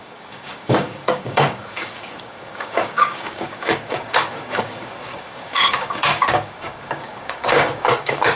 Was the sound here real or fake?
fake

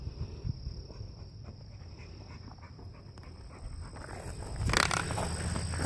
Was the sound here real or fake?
real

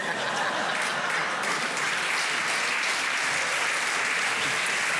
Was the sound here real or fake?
real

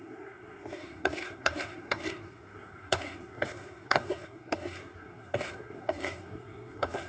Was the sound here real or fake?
fake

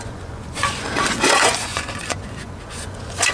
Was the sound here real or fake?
fake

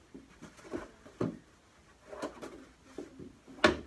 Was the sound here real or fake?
real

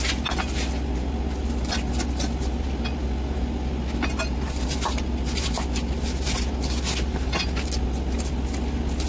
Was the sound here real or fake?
real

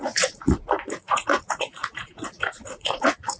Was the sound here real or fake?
fake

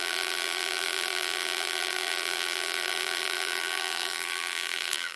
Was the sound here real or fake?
fake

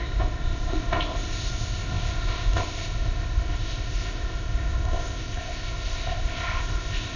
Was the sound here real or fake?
fake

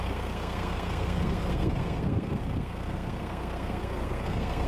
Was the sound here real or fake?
fake